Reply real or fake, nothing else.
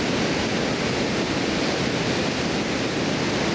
real